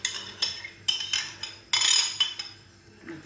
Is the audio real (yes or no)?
yes